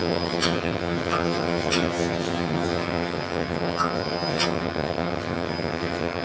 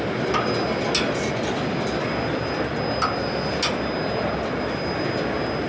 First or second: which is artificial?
first